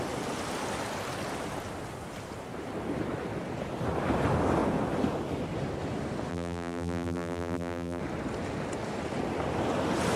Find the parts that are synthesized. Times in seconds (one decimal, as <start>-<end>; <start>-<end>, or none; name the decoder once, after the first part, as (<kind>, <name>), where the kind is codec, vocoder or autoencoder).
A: 6.3-8.0 (vocoder, BigVGAN v2)